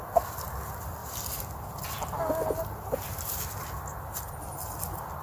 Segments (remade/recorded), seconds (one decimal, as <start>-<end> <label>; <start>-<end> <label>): 0.0-5.2 recorded